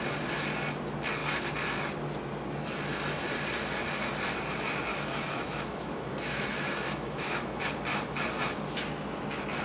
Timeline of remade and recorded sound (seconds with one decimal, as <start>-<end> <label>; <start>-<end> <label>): 0.0-4.9 recorded; 4.9-7.6 remade; 7.6-9.6 recorded